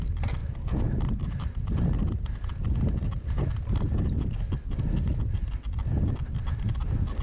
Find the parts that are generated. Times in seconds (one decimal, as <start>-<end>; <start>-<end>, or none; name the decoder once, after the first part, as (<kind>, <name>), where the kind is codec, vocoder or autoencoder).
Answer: none